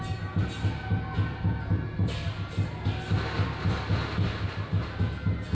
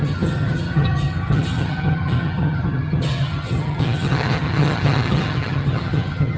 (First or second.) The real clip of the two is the first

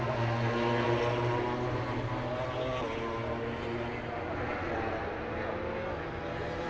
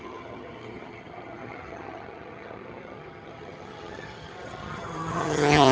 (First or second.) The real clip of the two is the first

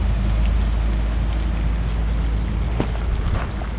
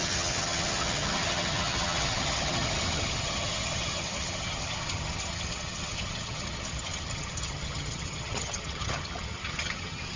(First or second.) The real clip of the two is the first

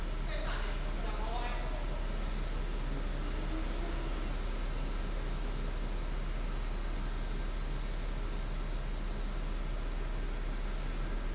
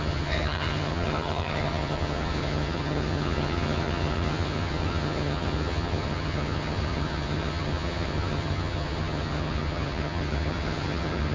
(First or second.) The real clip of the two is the first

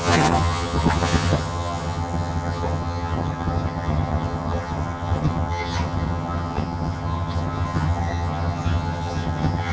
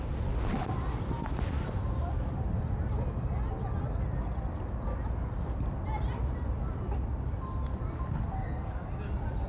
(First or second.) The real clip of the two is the second